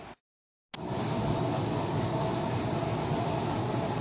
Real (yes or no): yes